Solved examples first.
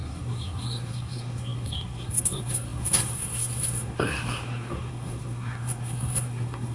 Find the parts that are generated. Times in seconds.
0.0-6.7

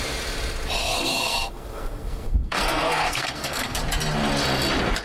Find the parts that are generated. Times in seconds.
0.8-3.8

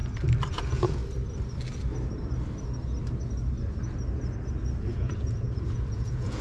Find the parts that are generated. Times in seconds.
0.5-1.0; 4.8-6.4

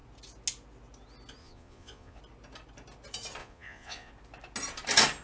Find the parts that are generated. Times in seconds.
1.4-2.2; 3.4-4.1